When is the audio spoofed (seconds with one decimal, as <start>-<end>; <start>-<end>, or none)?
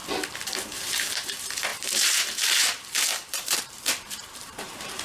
0.6-5.0